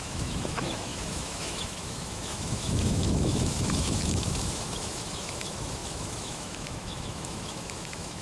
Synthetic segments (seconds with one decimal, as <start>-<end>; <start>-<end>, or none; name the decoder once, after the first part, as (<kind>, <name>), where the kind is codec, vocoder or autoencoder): 0.0-8.2 (autoencoder, DAC-VAE)